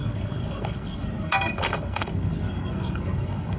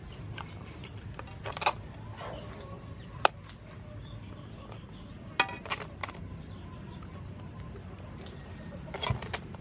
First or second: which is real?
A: second